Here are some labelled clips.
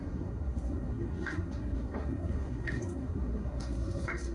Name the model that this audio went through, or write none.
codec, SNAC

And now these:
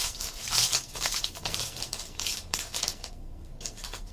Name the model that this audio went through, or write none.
codec, SNAC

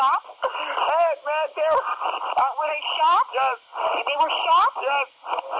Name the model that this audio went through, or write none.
none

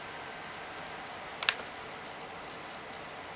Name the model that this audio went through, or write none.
none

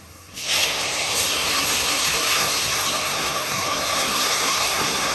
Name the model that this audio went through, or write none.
codec, SNAC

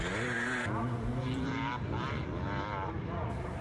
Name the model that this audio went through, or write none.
none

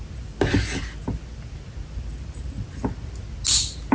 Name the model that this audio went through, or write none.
none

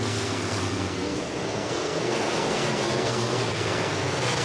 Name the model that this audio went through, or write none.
codec, SNAC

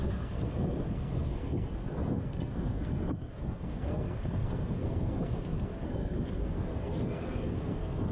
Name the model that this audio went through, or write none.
codec, SNAC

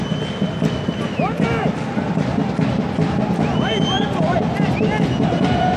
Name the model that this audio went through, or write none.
none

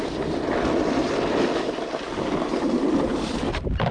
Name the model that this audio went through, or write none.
none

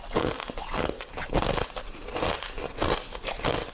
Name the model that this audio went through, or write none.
none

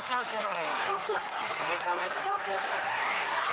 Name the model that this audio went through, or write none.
codec, SNAC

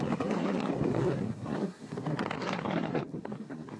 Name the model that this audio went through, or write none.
codec, SNAC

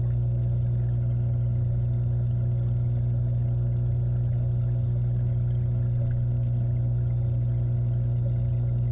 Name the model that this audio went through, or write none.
none